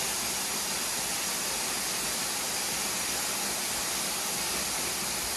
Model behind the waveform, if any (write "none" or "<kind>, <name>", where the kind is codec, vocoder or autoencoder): none